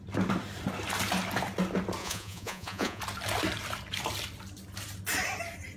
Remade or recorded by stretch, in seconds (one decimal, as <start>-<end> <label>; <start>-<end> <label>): 0.0-2.0 recorded; 2.0-3.0 remade; 3.0-5.8 recorded